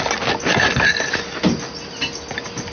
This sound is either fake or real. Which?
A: real